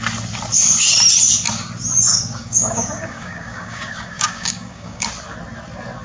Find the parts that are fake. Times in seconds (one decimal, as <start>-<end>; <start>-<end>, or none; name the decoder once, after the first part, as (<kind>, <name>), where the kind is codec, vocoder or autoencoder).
2.1-5.1 (codec, DAC)